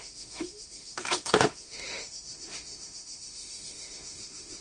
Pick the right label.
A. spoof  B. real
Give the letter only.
A